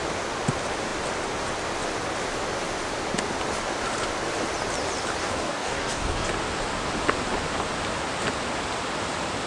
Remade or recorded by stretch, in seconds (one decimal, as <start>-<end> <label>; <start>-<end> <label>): 0.0-5.2 recorded; 5.2-6.3 remade; 6.3-9.5 recorded